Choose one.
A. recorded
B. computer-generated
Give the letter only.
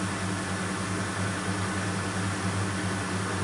A